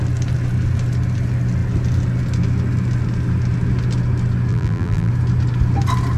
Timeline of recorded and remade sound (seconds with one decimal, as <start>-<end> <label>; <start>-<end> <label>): 0.0-4.5 recorded; 4.5-5.1 remade; 5.1-6.2 recorded